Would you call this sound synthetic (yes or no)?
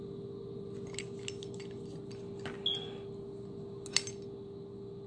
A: no